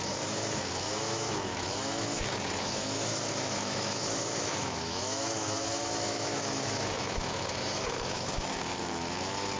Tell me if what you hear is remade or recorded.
remade